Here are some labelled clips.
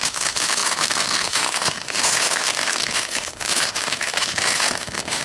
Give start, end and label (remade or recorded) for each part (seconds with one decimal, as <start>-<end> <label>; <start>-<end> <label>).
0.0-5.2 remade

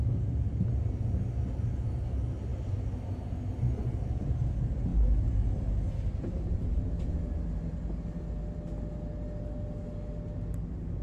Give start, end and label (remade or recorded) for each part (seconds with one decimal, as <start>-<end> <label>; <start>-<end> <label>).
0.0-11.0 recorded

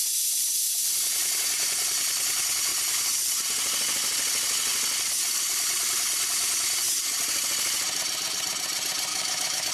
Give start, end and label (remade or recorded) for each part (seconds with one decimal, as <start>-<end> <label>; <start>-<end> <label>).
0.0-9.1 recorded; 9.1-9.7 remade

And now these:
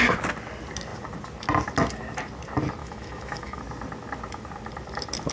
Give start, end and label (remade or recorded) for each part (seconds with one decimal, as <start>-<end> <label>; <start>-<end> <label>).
0.0-2.8 recorded; 2.8-3.6 remade; 3.6-5.3 recorded

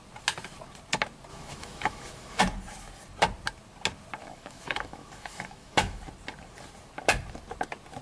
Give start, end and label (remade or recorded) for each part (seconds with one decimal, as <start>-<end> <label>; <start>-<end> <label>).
0.0-1.3 recorded; 1.3-2.4 remade; 2.4-4.2 recorded; 4.2-6.0 remade; 6.0-8.0 recorded